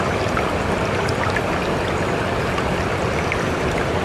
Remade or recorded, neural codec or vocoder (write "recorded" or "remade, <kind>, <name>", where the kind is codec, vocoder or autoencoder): recorded